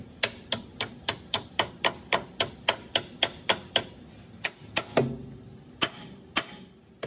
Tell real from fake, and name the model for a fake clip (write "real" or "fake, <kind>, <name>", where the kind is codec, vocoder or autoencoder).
real